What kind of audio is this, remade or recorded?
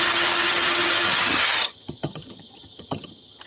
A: remade